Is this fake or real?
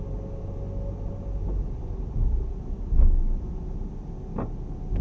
real